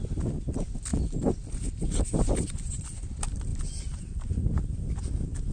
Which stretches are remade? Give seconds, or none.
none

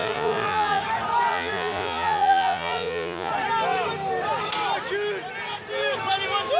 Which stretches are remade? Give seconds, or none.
0.0-0.8; 1.3-3.3

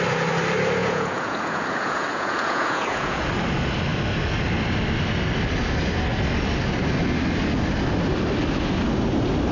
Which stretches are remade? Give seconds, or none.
0.8-3.3

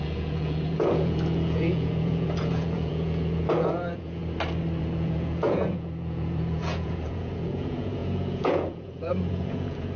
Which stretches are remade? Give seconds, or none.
0.0-4.2; 4.8-10.0

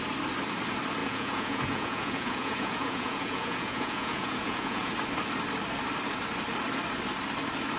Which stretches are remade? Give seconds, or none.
1.0-4.9

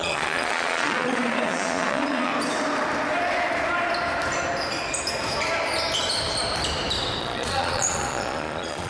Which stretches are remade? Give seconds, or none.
0.0-2.3; 7.2-8.9

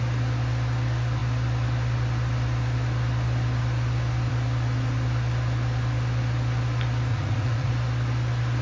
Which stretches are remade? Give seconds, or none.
7.1-7.7

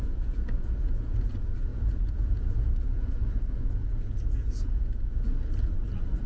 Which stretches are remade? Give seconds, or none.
0.0-5.3